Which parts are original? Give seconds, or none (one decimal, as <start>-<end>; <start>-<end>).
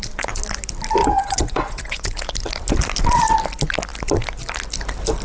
0.0-1.0; 2.0-5.2